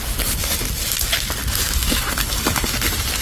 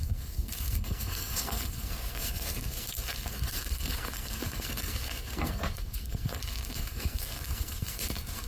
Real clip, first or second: first